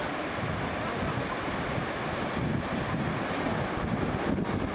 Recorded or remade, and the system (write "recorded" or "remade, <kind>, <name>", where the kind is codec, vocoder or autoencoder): recorded